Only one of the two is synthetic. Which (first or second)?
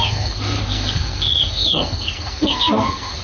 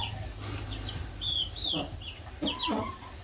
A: first